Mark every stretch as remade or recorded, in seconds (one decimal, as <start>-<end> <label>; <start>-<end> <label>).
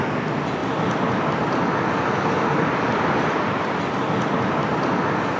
0.0-0.6 recorded; 0.6-3.8 remade; 3.8-5.4 recorded